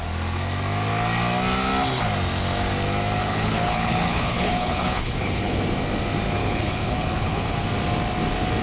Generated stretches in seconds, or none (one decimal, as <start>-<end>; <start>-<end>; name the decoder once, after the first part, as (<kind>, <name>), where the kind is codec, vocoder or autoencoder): 3.2-5.6 (codec, HILCodec); 6.4-7.5